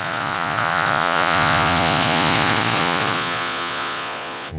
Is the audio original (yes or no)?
no